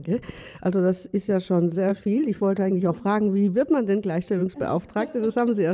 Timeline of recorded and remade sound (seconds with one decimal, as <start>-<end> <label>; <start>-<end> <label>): 0.0-1.9 recorded; 1.9-3.0 remade; 3.0-5.7 recorded

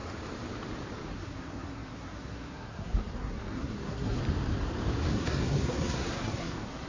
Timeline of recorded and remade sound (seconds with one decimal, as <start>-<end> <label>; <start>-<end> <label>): 0.0-1.1 recorded; 1.1-4.2 remade; 4.2-5.1 recorded; 5.1-6.9 remade

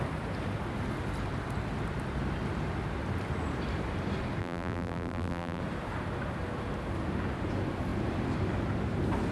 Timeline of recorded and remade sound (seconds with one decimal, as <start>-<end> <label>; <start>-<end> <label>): 0.0-4.4 recorded; 4.4-5.6 remade; 5.6-9.3 recorded